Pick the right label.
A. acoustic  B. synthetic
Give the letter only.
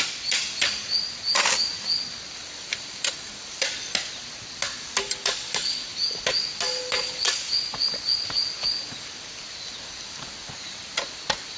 A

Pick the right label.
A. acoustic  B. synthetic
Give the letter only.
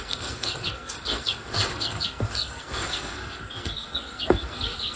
B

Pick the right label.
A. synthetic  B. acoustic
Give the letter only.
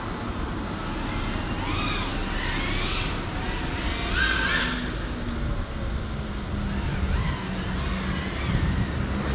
B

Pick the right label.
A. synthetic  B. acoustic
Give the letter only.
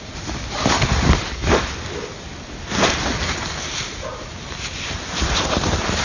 B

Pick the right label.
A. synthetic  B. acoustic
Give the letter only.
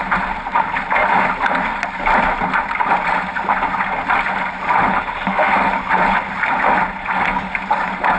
B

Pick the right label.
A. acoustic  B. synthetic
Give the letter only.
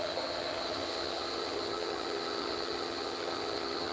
B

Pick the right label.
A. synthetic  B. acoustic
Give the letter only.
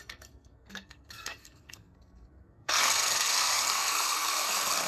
A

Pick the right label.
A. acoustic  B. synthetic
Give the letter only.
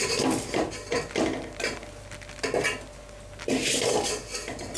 A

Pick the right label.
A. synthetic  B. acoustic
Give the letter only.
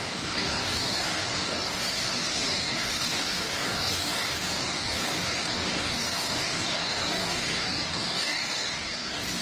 A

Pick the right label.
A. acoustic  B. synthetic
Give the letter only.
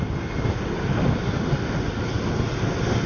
A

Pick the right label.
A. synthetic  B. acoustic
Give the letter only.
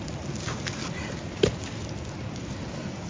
B